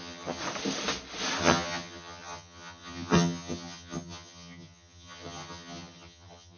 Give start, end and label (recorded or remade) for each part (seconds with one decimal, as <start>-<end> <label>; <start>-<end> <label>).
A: 0.0-0.4 remade; 0.4-1.4 recorded; 1.4-6.6 remade